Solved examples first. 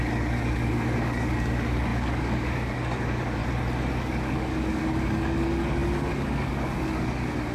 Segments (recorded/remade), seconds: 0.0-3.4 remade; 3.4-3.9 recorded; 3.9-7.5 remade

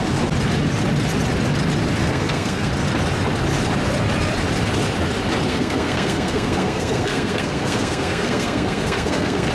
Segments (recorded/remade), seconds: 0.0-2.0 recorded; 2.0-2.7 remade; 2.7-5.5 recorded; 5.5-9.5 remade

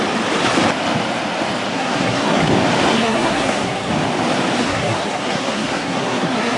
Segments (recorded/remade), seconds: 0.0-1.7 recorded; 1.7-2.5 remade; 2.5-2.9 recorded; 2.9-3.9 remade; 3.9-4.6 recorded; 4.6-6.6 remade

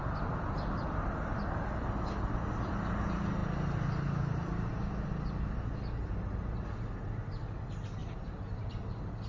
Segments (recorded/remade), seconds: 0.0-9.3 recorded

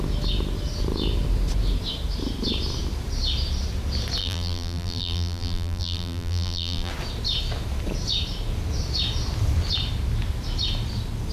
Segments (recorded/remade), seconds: 0.0-4.2 recorded; 4.2-6.9 remade; 6.9-11.3 recorded

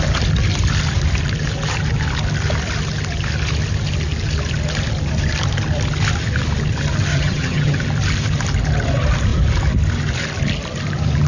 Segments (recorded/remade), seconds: 0.0-7.1 recorded; 7.1-7.8 remade; 7.8-11.3 recorded